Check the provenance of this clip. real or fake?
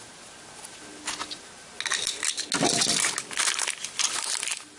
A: real